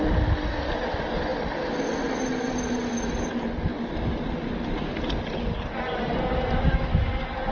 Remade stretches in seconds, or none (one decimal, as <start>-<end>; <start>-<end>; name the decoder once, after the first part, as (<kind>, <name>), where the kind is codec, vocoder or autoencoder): none